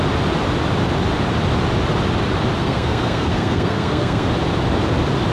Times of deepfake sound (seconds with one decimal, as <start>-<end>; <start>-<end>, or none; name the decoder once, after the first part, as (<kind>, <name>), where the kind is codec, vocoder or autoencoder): 2.6-4.3 (codec, SNAC)